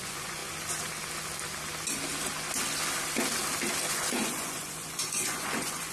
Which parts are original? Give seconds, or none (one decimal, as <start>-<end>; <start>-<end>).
0.4-3.9